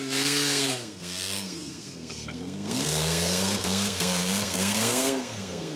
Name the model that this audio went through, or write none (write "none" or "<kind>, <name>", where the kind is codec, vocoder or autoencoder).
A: codec, SNAC